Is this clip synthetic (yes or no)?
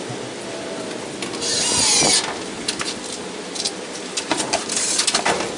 no